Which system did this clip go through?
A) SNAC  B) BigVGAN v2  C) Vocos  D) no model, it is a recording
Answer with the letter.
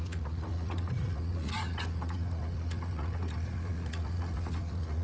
C